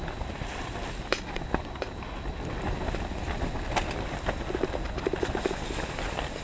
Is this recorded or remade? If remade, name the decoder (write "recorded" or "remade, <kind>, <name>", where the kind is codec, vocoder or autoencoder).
recorded